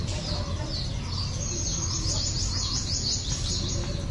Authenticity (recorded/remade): recorded